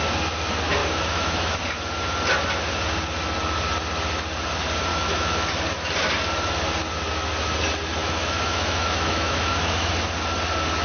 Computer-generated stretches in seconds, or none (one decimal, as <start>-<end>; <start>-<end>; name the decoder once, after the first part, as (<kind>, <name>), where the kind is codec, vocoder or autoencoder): 0.8-1.6 (autoencoder, DAC-VAE); 4.9-5.5; 8.0-9.9